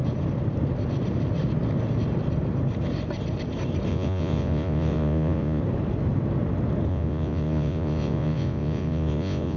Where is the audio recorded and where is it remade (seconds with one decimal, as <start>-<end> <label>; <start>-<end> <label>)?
0.0-3.9 recorded; 3.9-5.6 remade; 5.6-6.9 recorded; 6.9-9.6 remade